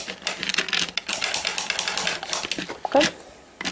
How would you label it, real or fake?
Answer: real